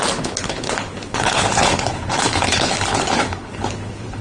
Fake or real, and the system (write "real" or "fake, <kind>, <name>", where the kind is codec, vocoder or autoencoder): fake, codec, HILCodec